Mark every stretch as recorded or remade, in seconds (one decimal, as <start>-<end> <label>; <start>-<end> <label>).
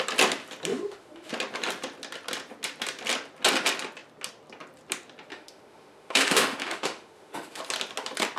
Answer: 0.0-0.7 recorded; 0.7-1.3 remade; 1.3-5.3 recorded; 5.3-7.6 remade; 7.6-8.4 recorded